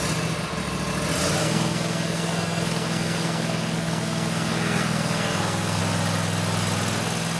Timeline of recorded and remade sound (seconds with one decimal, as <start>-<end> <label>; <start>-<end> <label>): 0.0-1.4 recorded; 1.4-5.8 remade; 5.8-7.4 recorded

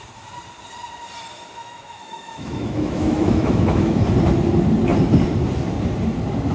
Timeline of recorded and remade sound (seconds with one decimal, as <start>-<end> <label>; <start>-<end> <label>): 0.0-1.6 recorded; 1.6-4.1 remade; 4.1-6.5 recorded

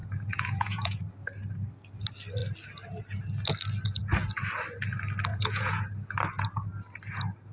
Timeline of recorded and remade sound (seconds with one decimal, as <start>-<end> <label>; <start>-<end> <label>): 0.0-1.0 remade; 1.0-5.3 recorded; 5.3-5.8 remade; 5.8-7.5 recorded

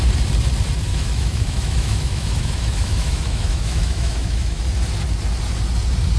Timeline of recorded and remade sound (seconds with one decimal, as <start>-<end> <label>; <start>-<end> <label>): 0.0-0.9 recorded; 0.9-4.6 remade; 4.6-6.2 recorded

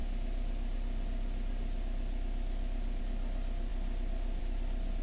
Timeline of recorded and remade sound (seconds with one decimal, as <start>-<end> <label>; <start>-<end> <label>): 0.0-5.0 recorded

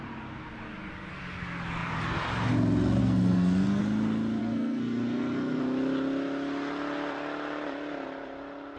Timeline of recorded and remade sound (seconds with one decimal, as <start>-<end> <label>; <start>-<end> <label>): 0.0-3.0 recorded; 3.0-3.8 remade; 3.8-4.4 recorded; 4.4-5.6 remade; 5.6-8.8 recorded